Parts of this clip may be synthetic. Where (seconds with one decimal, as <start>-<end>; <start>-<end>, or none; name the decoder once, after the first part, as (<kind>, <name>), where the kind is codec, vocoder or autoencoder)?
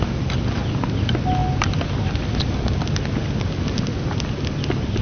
none